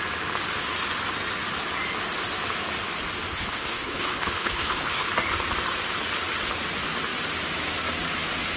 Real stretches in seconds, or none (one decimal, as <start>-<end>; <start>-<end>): 0.0-3.3; 5.1-8.6